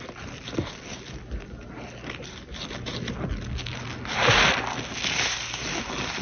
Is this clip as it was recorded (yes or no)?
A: yes